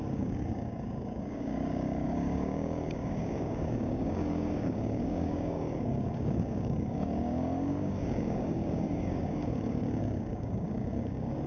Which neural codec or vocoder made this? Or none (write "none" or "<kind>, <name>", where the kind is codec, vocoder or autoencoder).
codec, DAC